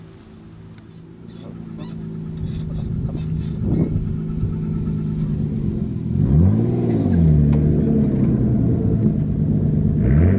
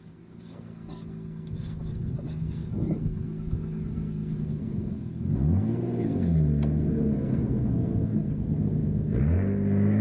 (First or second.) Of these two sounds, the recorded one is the first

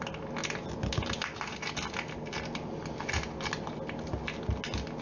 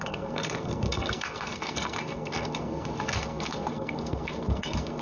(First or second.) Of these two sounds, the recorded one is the first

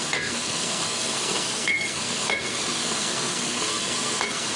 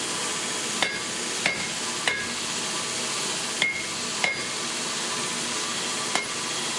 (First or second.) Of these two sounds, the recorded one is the second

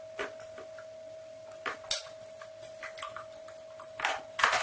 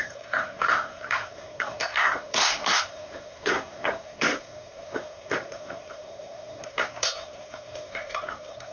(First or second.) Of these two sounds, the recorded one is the first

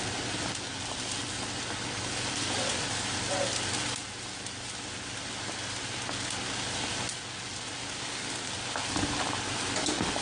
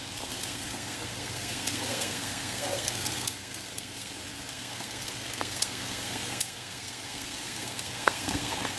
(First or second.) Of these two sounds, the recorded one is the first